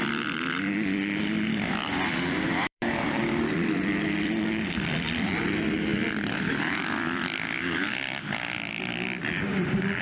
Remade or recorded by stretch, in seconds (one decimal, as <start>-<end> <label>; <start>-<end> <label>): 0.0-10.0 remade